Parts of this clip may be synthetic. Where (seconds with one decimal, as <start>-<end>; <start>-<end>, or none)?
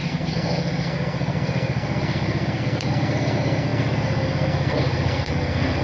0.0-5.8